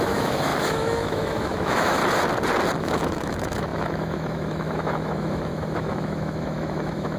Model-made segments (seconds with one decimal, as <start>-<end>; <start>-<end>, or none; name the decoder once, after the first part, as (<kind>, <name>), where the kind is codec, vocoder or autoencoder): 0.0-2.0 (autoencoder, DAC-VAE); 2.8-7.2